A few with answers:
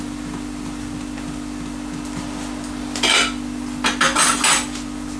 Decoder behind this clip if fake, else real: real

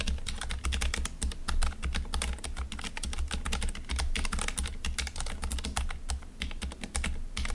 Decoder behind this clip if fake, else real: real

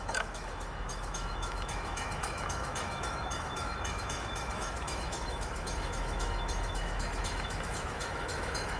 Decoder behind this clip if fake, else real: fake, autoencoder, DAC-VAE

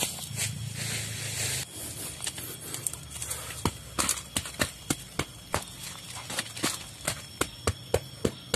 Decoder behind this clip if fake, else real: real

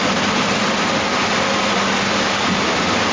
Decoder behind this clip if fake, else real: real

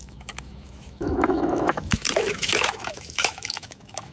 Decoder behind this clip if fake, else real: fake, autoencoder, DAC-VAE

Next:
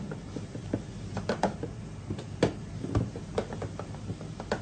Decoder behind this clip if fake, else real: real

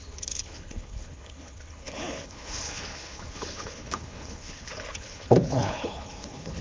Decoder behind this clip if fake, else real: fake, codec, HILCodec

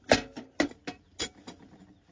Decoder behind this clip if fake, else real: real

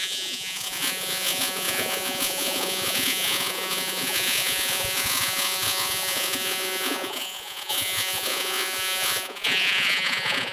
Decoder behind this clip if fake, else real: fake, vocoder, Vocos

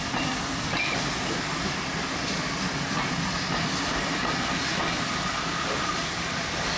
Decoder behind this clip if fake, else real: real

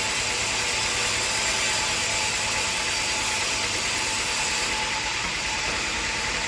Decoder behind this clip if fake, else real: real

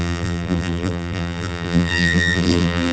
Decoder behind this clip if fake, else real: fake, vocoder, BigVGAN v2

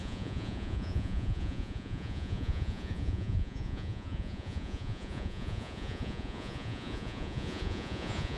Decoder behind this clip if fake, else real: fake, vocoder, Vocos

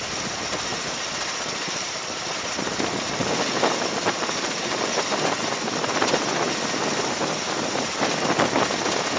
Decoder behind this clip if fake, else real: fake, vocoder, BigVGAN v2